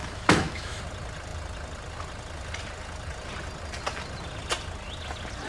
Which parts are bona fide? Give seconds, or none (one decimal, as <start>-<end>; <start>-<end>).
0.8-5.5